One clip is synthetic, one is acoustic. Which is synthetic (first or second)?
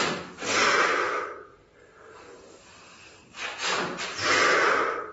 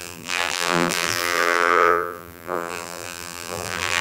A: second